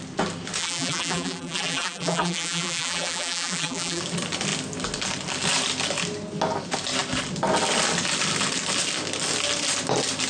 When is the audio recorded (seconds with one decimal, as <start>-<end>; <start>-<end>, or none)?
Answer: 0.0-0.6; 4.0-10.3